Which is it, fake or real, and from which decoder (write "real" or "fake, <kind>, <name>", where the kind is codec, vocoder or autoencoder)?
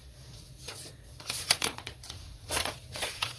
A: fake, vocoder, Vocos